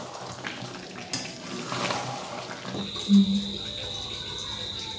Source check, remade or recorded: recorded